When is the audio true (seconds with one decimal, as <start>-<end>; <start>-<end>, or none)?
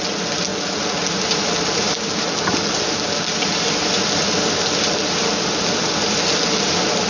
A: 0.0-7.1